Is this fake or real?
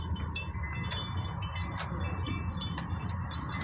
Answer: fake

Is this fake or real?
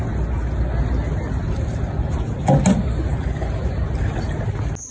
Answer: real